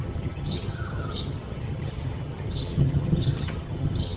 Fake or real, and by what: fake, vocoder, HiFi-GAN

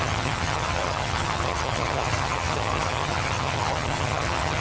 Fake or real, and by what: fake, vocoder, HiFi-GAN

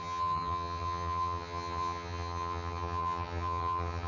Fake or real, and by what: fake, vocoder, HiFi-GAN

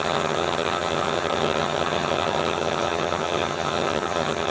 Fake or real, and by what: fake, vocoder, HiFi-GAN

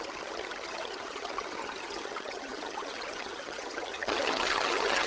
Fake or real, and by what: fake, vocoder, HiFi-GAN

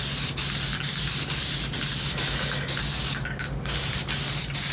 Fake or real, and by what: real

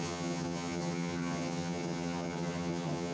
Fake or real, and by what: fake, vocoder, HiFi-GAN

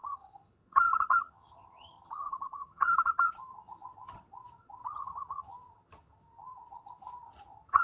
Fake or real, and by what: fake, vocoder, HiFi-GAN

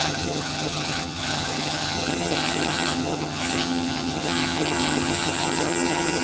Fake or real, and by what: fake, vocoder, HiFi-GAN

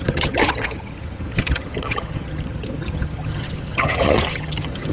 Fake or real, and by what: fake, vocoder, HiFi-GAN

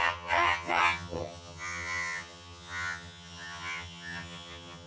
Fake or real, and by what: fake, vocoder, HiFi-GAN